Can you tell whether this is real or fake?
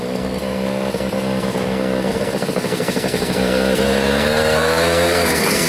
fake